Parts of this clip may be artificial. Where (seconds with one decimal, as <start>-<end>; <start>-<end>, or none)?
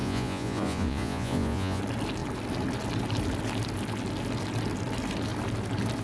0.0-1.8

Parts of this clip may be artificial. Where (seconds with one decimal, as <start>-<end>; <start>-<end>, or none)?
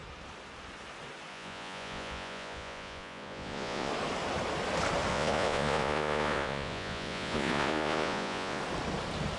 1.3-3.9; 5.1-8.6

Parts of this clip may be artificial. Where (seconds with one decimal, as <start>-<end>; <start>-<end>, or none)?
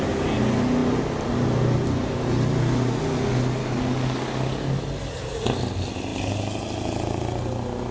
3.6-4.8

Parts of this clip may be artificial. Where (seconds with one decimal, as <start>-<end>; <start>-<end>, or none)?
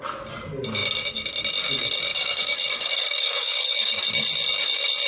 2.1-4.0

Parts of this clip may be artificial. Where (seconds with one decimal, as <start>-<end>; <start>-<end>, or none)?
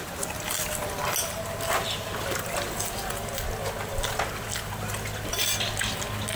none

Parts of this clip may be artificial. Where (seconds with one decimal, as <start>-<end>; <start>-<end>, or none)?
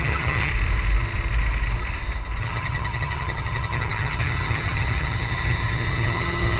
0.0-0.5; 2.4-6.6